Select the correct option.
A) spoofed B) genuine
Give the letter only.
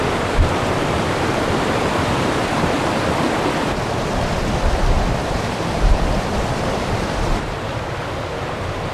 A